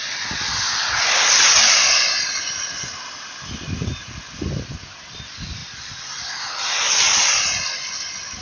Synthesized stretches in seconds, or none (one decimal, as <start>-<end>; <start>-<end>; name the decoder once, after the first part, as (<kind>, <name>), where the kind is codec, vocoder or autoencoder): none